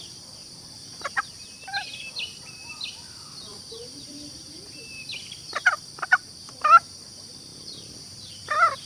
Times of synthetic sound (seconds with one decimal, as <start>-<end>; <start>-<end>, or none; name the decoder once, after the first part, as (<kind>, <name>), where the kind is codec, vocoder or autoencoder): 0.4-1.6 (vocoder, BigVGAN v2); 3.5-4.8; 7.5-8.3